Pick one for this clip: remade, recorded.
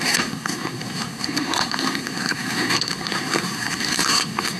remade